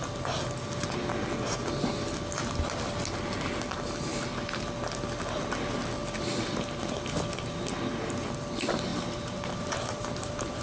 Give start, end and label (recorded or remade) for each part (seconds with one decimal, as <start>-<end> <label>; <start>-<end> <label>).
0.0-8.9 recorded; 8.9-10.6 remade